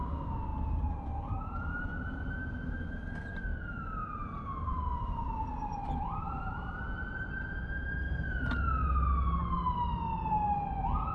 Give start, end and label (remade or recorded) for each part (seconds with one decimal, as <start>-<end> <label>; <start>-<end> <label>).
0.0-0.5 recorded; 0.5-3.0 remade; 3.0-3.5 recorded; 3.5-6.8 remade; 6.8-11.1 recorded